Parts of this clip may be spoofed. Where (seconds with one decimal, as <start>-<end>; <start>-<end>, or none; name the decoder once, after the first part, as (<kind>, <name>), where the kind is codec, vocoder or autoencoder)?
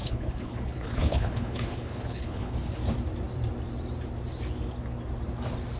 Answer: 0.0-2.7 (codec, HILCodec)